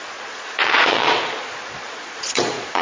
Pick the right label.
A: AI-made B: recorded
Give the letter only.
A